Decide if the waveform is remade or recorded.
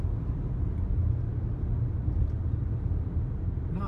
recorded